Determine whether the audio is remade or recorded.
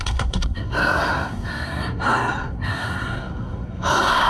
remade